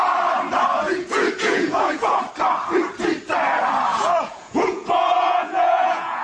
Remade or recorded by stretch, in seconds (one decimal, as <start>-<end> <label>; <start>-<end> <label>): 0.0-0.7 recorded; 0.7-2.2 remade; 2.2-3.9 recorded; 3.9-6.2 remade